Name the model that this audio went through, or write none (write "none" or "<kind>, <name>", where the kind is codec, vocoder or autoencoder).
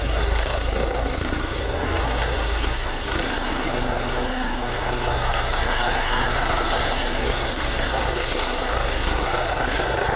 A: codec, SNAC